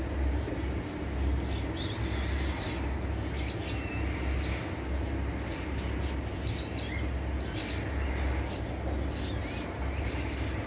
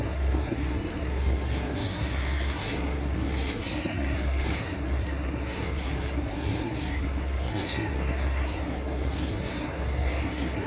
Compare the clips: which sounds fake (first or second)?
second